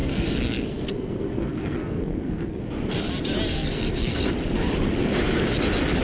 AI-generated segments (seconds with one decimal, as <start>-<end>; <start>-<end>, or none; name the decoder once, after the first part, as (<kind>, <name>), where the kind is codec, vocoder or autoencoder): 0.0-2.6 (codec, SNAC); 3.5-4.2